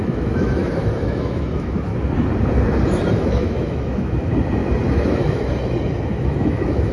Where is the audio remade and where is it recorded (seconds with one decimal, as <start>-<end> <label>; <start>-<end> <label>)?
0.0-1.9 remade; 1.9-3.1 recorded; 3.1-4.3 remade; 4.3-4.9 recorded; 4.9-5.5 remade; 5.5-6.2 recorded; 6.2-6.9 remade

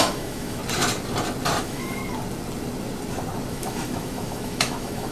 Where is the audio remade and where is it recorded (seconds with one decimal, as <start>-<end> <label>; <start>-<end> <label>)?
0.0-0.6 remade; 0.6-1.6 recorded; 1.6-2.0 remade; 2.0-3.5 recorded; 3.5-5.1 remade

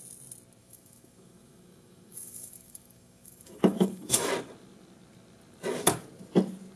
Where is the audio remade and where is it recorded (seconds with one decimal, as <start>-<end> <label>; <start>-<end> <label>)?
0.0-0.6 recorded; 0.6-4.3 remade; 4.3-6.8 recorded

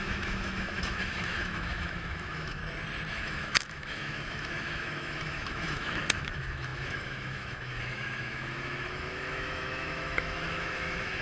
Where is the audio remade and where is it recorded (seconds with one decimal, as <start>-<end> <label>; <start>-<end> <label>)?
0.0-2.6 remade; 2.6-3.1 recorded; 3.1-11.2 remade